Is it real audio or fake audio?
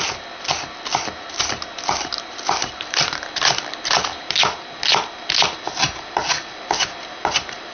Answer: real